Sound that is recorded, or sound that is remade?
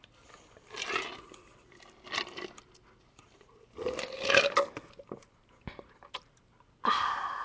recorded